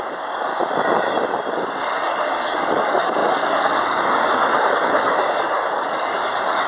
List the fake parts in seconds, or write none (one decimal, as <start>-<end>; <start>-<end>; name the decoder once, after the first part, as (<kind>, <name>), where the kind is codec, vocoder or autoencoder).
0.0-0.5 (codec, DAC); 1.5-6.7